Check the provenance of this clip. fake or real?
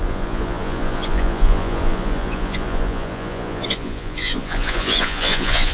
fake